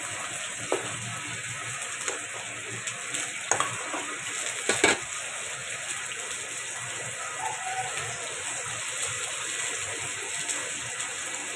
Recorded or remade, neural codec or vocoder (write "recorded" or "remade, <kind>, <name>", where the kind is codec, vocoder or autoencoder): recorded